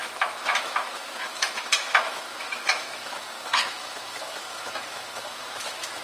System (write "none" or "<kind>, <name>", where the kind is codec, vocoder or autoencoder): autoencoder, DAC-VAE